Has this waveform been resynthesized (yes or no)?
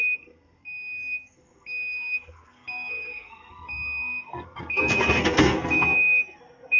yes